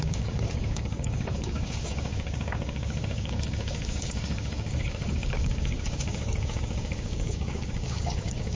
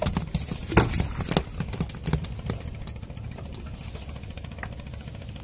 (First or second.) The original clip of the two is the second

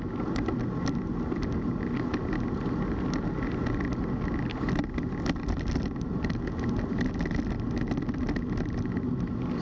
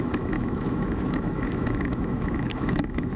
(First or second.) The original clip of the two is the first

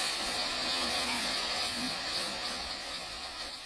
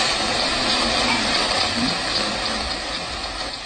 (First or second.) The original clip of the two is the second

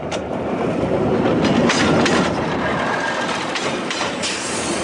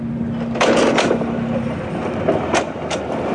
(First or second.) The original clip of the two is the second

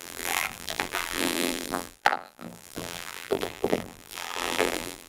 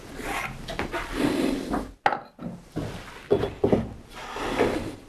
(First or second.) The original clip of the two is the second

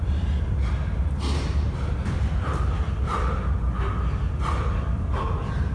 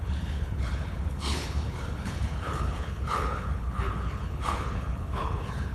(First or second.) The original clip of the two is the first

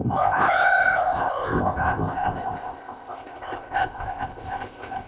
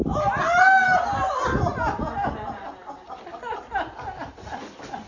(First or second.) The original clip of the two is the second